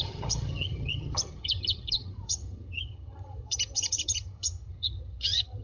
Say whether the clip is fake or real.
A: fake